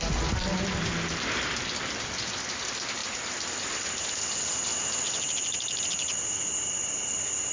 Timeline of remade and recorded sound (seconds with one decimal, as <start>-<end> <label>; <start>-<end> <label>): 0.0-3.0 recorded; 3.0-4.1 remade; 4.1-7.5 recorded